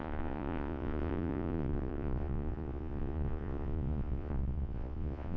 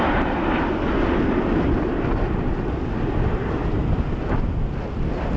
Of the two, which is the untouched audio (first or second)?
second